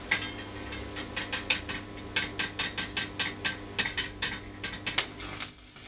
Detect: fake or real real